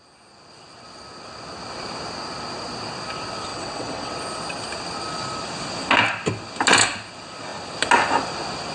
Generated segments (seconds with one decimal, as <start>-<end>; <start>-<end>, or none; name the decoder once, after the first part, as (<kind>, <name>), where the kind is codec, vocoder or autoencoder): 3.5-4.1 (vocoder, WaveNeXt)